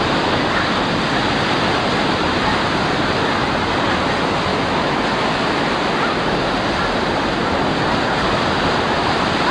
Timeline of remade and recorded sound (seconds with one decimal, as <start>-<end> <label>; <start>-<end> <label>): 0.0-4.5 recorded; 4.5-5.0 remade; 5.0-9.5 recorded